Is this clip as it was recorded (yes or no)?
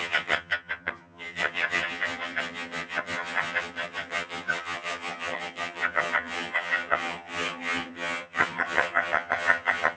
no